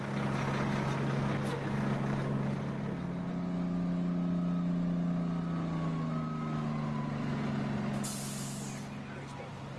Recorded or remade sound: recorded